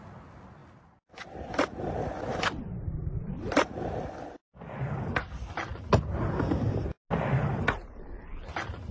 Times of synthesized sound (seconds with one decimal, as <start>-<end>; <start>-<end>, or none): none